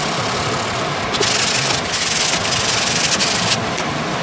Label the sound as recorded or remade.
recorded